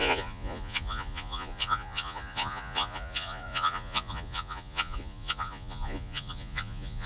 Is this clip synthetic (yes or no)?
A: yes